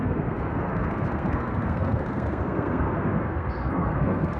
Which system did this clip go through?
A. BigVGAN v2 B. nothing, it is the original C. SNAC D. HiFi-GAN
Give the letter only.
C